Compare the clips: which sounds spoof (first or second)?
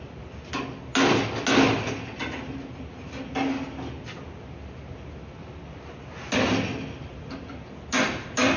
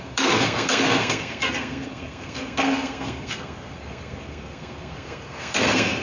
second